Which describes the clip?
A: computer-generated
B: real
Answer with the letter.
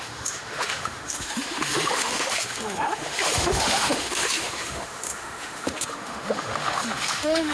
A